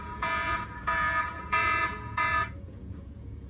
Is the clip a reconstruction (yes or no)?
yes